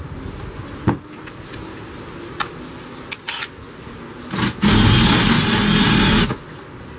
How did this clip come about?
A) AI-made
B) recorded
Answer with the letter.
B